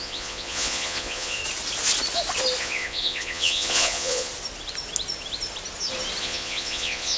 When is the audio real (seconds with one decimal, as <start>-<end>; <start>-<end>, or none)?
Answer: 1.4-2.6; 4.3-6.2